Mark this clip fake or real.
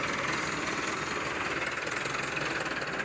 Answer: real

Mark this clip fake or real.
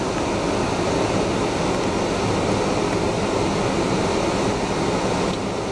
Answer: real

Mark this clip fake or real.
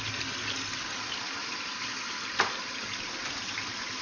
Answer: real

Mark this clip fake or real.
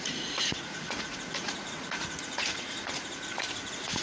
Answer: fake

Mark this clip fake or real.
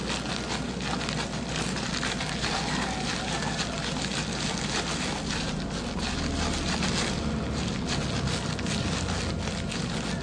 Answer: real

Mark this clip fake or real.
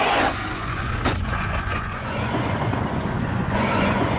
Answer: fake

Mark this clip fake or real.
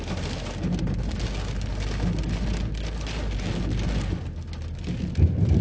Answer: real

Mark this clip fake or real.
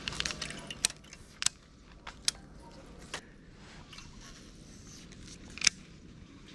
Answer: real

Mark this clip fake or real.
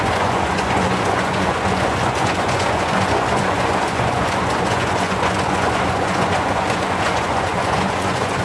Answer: fake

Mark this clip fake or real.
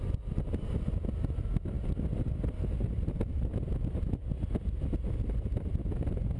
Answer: real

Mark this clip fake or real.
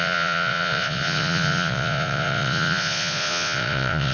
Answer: fake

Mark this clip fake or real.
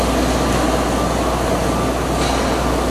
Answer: real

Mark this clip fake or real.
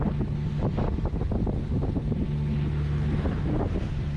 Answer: real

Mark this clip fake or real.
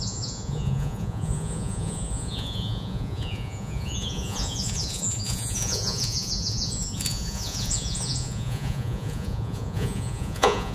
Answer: fake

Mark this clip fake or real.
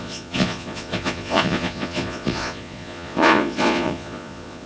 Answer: fake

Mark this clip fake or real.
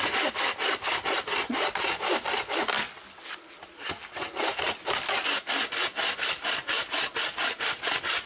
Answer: real